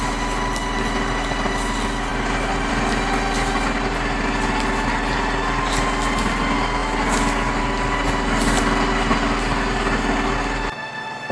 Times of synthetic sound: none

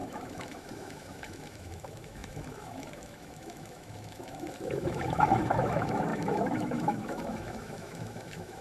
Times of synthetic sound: 0.0-8.6

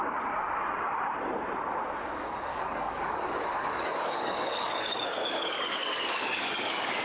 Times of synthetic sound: 2.5-3.2; 3.6-7.0